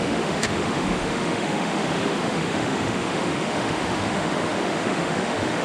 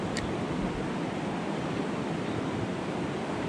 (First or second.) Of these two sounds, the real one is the second